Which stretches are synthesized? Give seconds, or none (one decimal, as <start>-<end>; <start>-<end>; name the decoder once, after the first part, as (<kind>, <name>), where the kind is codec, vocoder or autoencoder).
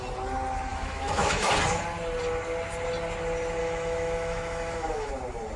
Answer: 0.7-1.5 (autoencoder, DAC-VAE); 3.6-5.1